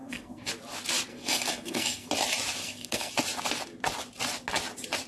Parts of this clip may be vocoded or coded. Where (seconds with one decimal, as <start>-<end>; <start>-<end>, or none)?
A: 0.0-0.5; 1.1-2.1; 2.6-3.1